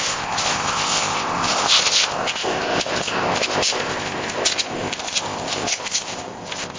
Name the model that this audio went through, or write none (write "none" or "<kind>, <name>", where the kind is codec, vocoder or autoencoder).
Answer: codec, ZipCodec